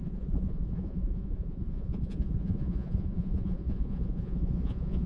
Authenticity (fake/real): fake